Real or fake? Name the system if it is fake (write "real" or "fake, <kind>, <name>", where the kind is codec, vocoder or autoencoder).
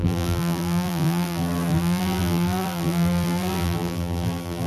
fake, vocoder, BigVGAN v2